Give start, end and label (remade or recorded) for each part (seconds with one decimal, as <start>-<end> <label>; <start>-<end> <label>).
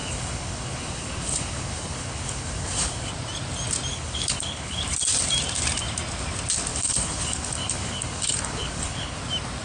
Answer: 0.0-3.1 remade; 3.1-3.9 recorded; 3.9-4.8 remade; 4.8-6.7 recorded; 6.7-9.2 remade; 9.2-9.6 recorded